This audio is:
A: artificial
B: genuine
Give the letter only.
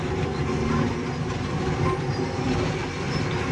B